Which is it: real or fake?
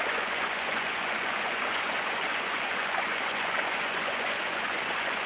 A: fake